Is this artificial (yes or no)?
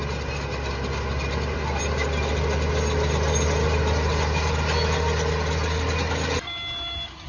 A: no